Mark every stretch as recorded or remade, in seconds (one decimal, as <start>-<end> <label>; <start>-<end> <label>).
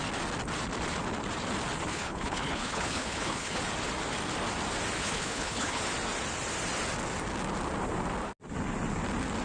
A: 0.0-1.9 recorded; 1.9-3.6 remade; 3.6-5.0 recorded; 5.0-5.8 remade; 5.8-9.4 recorded